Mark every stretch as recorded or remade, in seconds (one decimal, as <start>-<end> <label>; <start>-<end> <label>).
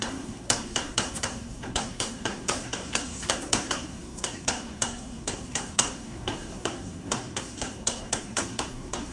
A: 0.0-9.1 remade